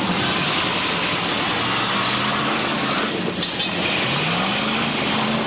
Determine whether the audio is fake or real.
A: real